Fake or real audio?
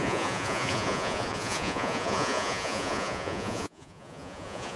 fake